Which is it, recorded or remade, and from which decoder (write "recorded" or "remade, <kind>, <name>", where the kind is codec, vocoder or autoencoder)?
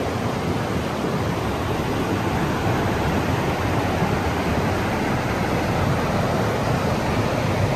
recorded